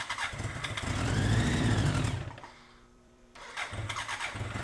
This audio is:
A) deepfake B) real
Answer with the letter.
A